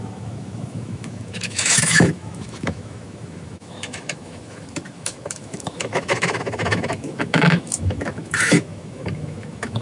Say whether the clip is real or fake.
fake